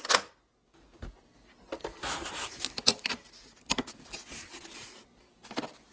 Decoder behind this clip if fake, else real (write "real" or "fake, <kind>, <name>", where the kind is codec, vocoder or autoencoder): real